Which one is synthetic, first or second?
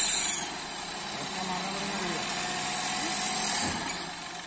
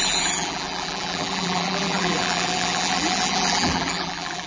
second